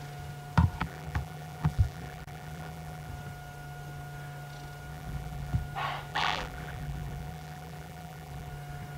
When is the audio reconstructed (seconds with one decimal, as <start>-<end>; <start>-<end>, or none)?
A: 0.8-3.1; 4.9-5.6; 6.1-8.5